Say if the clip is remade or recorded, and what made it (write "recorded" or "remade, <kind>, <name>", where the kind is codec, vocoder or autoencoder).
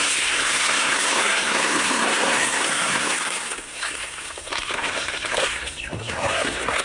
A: remade, codec, SNAC